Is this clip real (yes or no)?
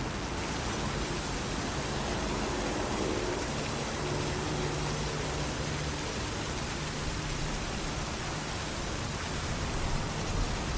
yes